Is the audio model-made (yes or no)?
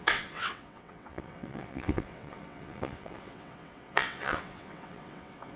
yes